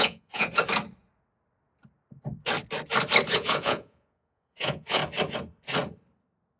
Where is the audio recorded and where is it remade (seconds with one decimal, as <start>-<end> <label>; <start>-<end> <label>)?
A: 0.0-0.5 remade; 0.5-3.3 recorded; 3.3-5.0 remade; 5.0-6.6 recorded